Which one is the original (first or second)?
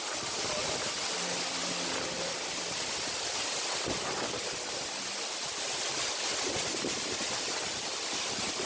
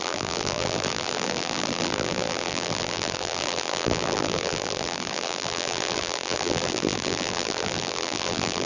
first